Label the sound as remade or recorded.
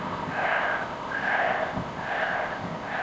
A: remade